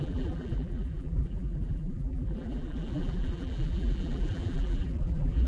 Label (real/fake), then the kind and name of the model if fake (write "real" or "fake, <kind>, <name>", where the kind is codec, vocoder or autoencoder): fake, vocoder, BigVGAN v2